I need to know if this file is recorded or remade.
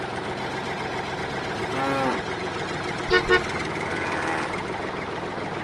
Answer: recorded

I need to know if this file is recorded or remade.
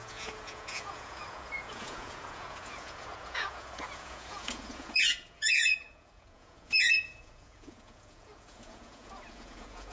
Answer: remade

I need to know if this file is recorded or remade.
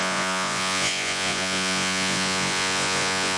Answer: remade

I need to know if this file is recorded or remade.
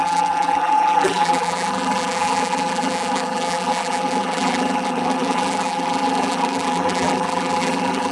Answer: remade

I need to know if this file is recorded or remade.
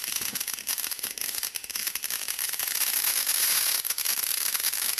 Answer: remade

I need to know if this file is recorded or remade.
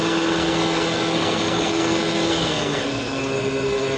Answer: remade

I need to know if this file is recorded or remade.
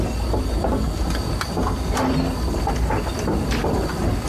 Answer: recorded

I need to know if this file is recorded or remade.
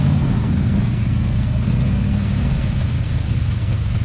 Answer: remade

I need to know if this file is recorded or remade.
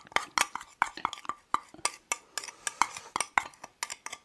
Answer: recorded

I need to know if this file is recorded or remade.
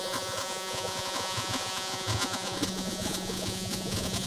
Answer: remade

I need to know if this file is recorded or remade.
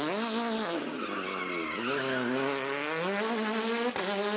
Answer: recorded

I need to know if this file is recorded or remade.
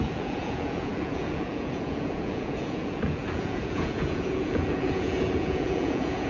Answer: remade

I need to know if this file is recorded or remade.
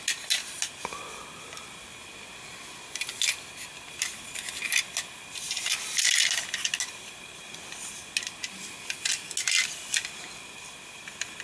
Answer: recorded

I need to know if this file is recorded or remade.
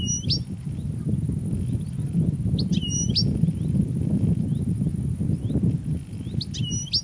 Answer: recorded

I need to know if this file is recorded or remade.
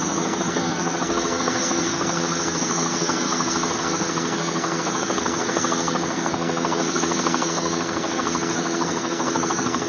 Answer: remade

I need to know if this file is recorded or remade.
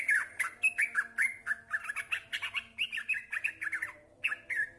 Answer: recorded